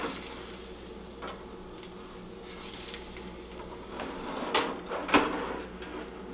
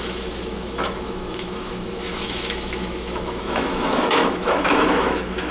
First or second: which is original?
first